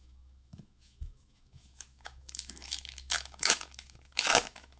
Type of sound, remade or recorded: remade